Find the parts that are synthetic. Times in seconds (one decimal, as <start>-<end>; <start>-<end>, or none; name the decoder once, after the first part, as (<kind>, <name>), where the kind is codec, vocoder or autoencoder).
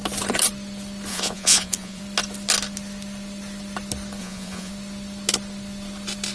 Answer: 1.1-2.0 (vocoder, Vocos); 4.2-4.7